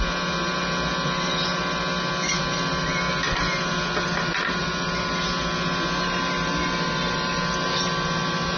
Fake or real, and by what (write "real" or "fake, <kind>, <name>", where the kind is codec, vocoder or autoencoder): real